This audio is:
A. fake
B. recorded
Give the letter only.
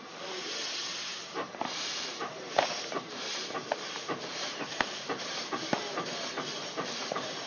A